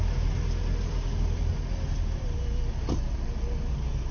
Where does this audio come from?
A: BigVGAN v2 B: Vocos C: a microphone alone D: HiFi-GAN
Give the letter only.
C